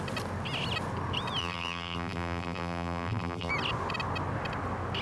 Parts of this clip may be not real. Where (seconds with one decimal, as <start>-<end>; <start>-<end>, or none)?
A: 1.4-3.5